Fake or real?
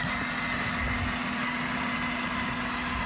real